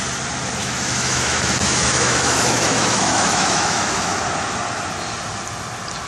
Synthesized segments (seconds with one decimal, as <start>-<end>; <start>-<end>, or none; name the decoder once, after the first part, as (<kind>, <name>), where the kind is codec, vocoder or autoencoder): 0.6-4.2 (autoencoder, DAC-VAE)